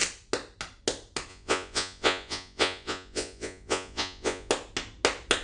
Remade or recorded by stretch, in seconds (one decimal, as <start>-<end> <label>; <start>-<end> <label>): 0.0-1.3 recorded; 1.3-4.5 remade; 4.5-5.4 recorded